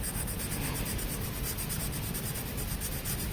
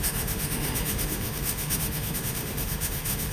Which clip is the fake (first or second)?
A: second